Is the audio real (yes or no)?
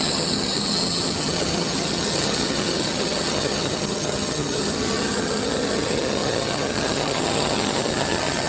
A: no